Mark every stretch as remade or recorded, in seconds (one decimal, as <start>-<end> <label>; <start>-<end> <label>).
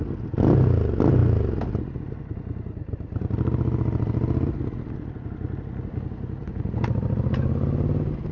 0.0-8.3 recorded